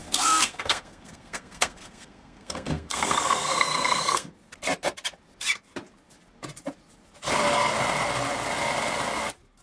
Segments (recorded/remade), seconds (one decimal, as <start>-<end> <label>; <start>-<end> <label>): 0.0-4.3 remade; 4.3-9.6 recorded